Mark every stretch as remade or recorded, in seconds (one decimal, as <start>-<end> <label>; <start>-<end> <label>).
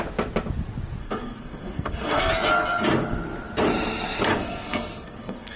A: 0.0-1.0 recorded; 1.0-2.3 remade; 2.3-4.3 recorded; 4.3-5.6 remade